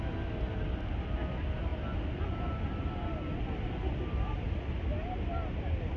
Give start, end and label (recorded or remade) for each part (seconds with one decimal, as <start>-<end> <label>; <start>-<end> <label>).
0.0-6.0 recorded